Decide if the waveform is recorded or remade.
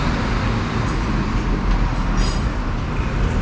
recorded